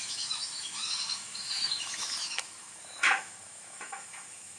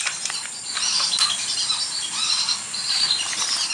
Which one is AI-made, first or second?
first